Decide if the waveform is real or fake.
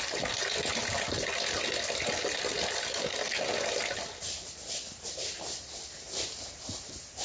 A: real